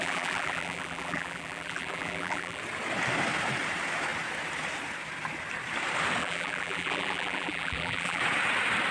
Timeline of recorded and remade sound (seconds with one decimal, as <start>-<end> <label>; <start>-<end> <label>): 0.0-2.6 remade; 2.6-6.2 recorded; 6.2-8.2 remade; 8.2-8.9 recorded